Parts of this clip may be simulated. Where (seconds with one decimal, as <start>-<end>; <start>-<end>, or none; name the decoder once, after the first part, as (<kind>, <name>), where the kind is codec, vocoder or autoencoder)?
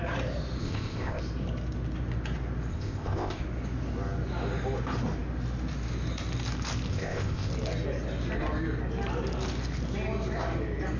0.6-1.2 (codec, ZipCodec); 2.7-3.4; 6.9-7.5